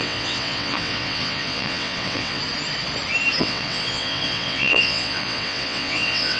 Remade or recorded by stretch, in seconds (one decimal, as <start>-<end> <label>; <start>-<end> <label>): 0.0-2.4 remade; 2.4-3.4 recorded; 3.4-6.4 remade

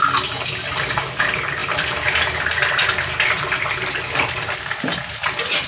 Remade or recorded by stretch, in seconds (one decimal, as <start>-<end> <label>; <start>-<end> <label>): 0.0-5.7 recorded

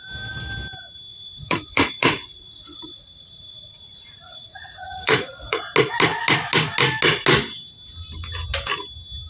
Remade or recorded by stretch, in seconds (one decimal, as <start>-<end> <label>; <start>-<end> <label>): 0.0-1.1 recorded; 1.1-5.6 remade; 5.6-9.3 recorded